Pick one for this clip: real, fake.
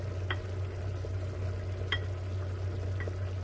real